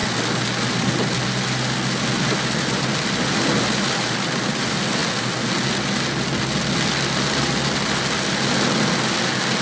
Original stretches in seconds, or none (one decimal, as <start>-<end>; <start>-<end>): 0.0-9.6